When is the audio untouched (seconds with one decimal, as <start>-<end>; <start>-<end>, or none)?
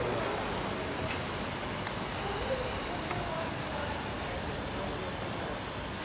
0.0-1.6; 5.0-6.0